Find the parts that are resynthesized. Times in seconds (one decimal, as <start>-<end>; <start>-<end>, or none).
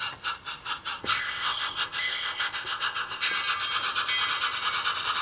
1.0-3.3